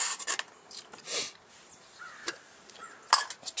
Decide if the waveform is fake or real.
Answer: real